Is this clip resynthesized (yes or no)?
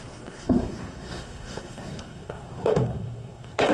yes